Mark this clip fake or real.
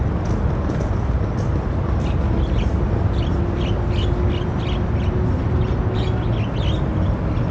real